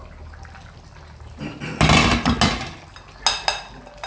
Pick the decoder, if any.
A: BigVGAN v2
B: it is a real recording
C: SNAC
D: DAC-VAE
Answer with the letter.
B